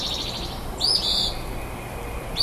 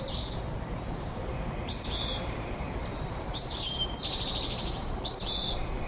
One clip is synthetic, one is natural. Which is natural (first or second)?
first